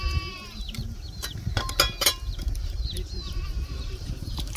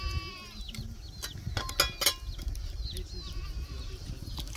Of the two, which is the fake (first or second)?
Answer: first